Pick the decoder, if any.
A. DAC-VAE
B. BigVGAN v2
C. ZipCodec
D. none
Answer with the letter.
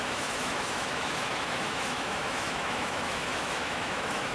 A